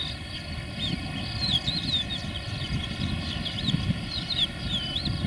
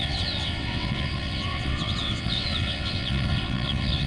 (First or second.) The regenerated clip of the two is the second